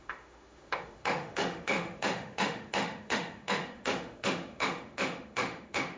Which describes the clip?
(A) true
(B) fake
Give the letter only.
B